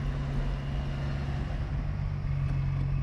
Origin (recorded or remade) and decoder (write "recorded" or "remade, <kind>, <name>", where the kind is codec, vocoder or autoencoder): recorded